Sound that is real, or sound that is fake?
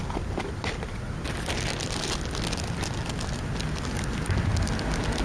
real